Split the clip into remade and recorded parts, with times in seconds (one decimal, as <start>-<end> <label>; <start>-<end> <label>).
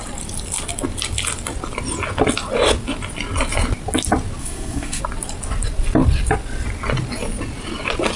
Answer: 0.0-4.4 recorded; 4.4-5.0 remade; 5.0-8.2 recorded